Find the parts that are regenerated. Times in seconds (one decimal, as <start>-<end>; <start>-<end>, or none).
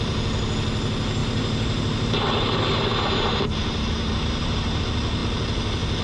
1.2-4.8